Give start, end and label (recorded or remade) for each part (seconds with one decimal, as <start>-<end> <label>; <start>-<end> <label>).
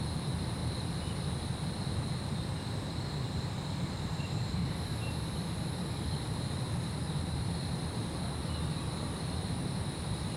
0.0-0.6 remade; 0.6-1.5 recorded; 1.5-4.6 remade; 4.6-8.7 recorded; 8.7-10.4 remade